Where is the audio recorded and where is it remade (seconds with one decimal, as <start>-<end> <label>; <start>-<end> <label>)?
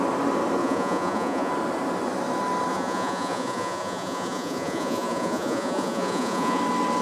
0.0-0.6 recorded; 0.6-1.5 remade; 1.5-2.7 recorded; 2.7-6.6 remade; 6.6-7.0 recorded